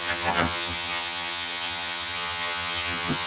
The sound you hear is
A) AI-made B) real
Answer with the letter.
A